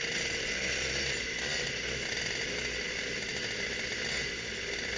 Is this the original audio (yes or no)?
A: yes